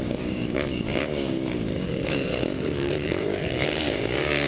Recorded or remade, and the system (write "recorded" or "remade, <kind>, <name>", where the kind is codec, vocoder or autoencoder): remade, codec, DAC